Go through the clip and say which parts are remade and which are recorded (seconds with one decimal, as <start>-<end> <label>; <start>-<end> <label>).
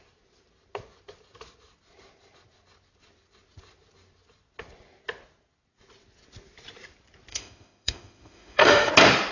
0.0-7.3 recorded; 7.3-8.9 remade; 8.9-9.3 recorded